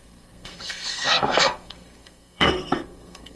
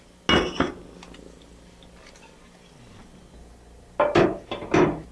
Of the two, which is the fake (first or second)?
first